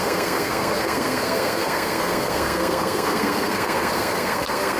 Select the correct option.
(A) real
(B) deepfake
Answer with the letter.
B